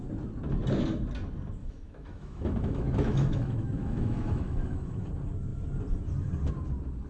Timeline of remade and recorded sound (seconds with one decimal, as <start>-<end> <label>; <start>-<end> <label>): 0.0-1.6 recorded; 1.6-5.1 remade; 5.1-7.1 recorded